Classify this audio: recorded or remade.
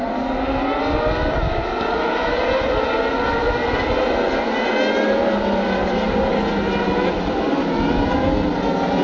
recorded